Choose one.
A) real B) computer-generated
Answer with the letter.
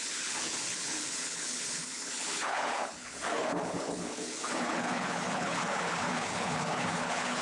B